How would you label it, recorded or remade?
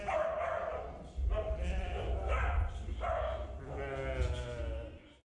recorded